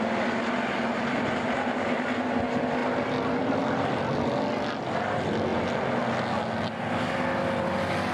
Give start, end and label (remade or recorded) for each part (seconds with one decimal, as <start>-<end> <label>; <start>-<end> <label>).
0.0-8.1 recorded